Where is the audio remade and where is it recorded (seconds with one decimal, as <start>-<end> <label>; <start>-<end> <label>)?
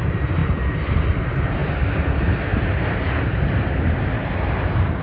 0.0-0.4 remade; 0.4-1.2 recorded; 1.2-1.6 remade; 1.6-4.6 recorded; 4.6-5.0 remade